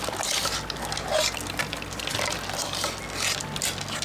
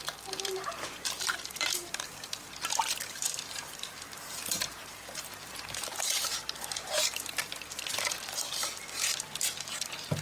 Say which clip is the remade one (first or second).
second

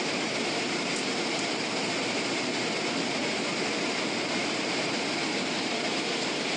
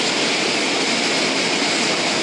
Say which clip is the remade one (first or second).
first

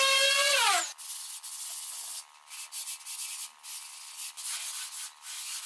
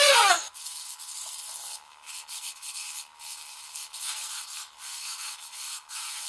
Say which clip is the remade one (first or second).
second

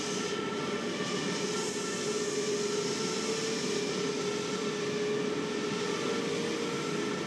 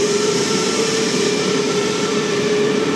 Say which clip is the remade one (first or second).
second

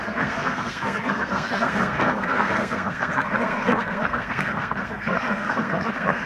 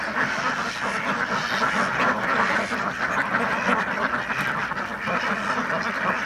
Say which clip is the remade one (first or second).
first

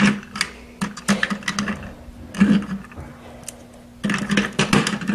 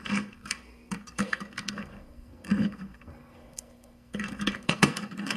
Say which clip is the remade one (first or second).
second